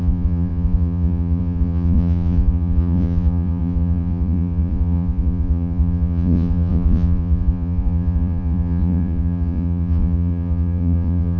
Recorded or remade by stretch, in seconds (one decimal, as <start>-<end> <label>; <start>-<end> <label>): 0.0-11.4 remade